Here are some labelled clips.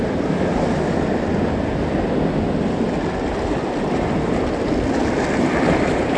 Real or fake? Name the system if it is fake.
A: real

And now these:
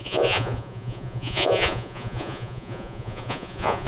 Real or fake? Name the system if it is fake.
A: fake, vocoder, Vocos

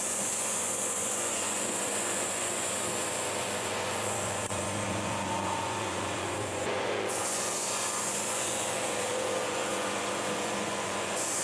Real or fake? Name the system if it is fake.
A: fake, vocoder, Vocos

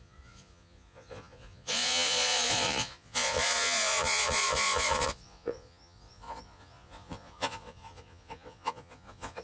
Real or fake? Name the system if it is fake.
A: fake, vocoder, Vocos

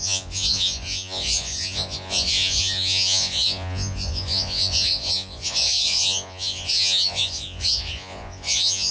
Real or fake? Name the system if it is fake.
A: fake, vocoder, Vocos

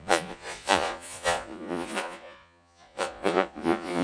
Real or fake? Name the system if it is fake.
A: fake, vocoder, Vocos